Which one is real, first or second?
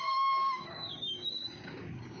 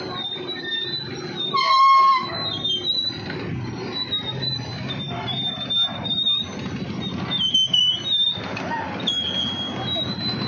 second